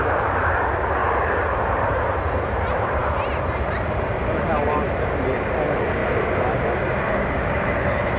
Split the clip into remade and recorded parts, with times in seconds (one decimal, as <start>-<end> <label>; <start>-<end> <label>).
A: 0.0-1.0 remade; 1.0-1.6 recorded; 1.6-6.0 remade; 6.0-7.0 recorded; 7.0-8.2 remade